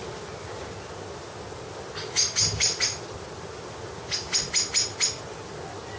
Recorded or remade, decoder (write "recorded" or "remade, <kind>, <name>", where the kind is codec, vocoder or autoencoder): recorded